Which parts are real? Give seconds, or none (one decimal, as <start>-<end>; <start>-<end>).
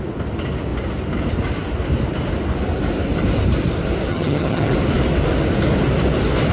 0.0-4.1; 4.7-6.5